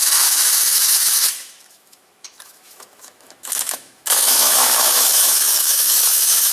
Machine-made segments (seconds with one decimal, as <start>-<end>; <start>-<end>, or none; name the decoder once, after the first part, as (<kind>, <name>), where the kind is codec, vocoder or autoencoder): 0.0-6.5 (autoencoder, DAC-VAE)